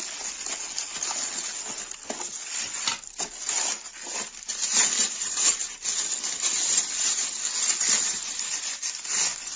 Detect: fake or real real